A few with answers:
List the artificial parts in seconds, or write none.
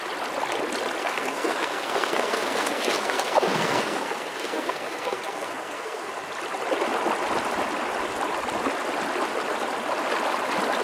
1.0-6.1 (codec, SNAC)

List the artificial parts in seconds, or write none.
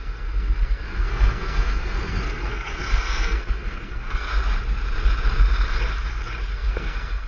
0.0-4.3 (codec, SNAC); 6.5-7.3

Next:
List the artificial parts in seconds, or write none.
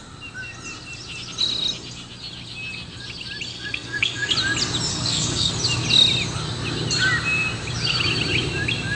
3.5-4.3 (codec, SNAC); 4.9-5.5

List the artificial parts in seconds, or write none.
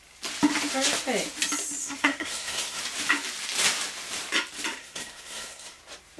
1.8-2.8 (codec, SNAC); 4.8-5.8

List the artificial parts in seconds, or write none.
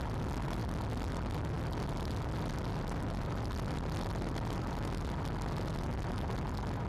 none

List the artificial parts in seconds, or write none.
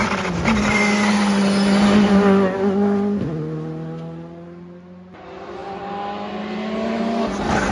none